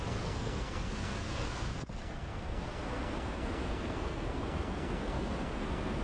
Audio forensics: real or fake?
fake